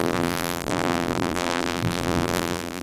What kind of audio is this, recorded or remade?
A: remade